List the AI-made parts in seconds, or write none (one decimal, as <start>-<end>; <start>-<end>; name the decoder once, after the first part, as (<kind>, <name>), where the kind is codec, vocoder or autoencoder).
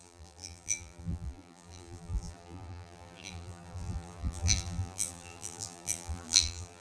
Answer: 0.0-6.8 (vocoder, BigVGAN v2)